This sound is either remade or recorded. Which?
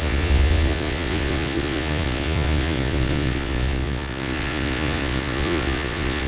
remade